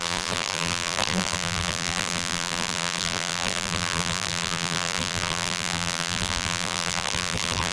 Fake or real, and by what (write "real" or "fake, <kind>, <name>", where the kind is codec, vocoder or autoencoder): fake, vocoder, BigVGAN v2